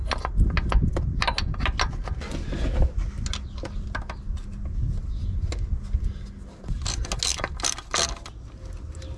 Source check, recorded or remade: recorded